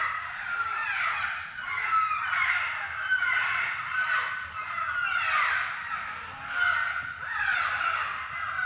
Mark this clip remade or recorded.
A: recorded